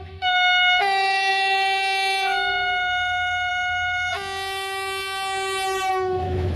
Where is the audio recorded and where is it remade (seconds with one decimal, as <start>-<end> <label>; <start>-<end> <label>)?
0.0-4.1 remade; 4.1-5.9 recorded; 5.9-6.6 remade